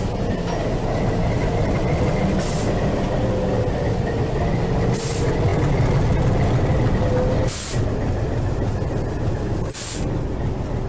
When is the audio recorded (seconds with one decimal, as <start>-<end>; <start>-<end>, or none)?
0.0-10.9